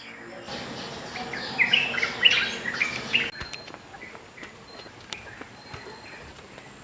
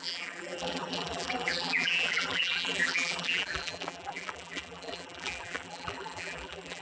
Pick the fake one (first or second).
second